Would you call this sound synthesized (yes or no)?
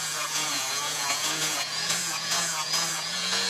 yes